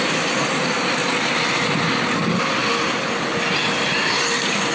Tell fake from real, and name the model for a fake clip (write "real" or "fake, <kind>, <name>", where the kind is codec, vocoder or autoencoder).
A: real